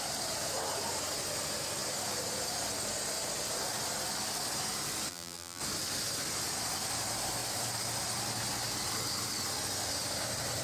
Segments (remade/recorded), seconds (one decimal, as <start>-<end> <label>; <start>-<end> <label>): 0.0-5.1 recorded; 5.1-5.6 remade; 5.6-10.6 recorded